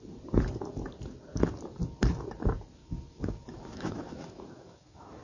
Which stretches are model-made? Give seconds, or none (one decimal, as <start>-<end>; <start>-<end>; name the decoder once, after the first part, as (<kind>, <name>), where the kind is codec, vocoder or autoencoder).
2.8-5.2 (autoencoder, DAC-VAE)